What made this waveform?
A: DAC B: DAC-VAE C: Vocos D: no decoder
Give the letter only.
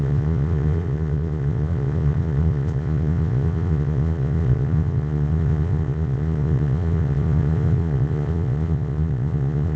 C